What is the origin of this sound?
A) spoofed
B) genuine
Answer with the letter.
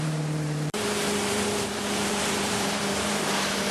A